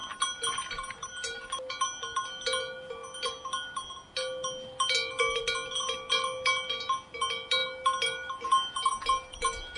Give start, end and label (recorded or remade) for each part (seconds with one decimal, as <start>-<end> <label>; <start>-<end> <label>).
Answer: 0.0-9.8 recorded